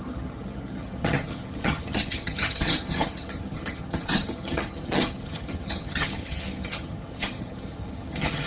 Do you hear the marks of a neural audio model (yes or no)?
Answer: yes